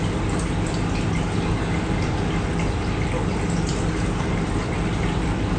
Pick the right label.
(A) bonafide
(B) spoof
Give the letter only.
A